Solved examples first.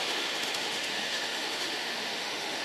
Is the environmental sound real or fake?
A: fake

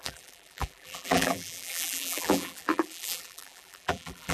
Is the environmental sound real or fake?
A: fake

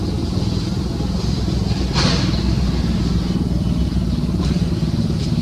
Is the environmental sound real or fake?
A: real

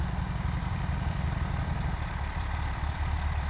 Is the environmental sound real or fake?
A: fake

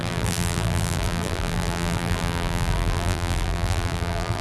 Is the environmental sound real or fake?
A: fake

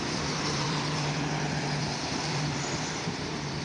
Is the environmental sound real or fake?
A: fake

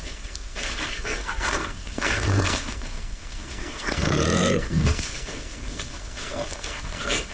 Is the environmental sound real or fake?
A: fake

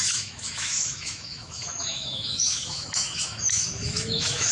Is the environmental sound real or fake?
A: fake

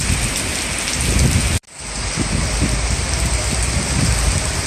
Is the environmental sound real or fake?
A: real